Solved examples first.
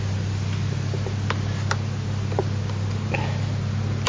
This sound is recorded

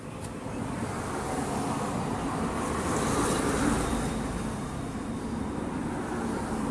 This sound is recorded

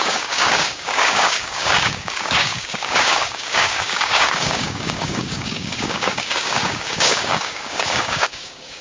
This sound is remade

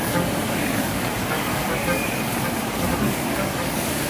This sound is remade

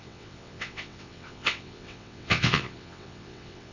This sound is remade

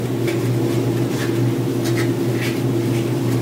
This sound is recorded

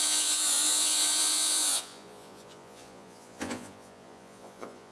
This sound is remade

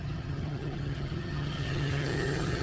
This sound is remade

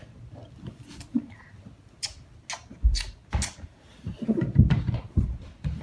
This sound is recorded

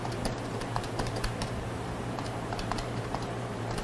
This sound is remade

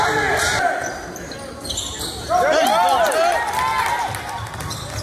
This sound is recorded